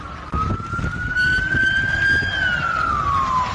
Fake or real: real